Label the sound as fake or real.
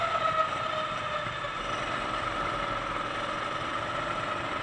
real